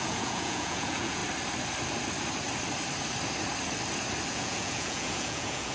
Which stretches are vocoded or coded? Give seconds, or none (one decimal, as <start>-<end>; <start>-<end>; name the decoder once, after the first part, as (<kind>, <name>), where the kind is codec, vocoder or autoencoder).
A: 0.0-1.2 (vocoder, Vocos); 4.3-5.7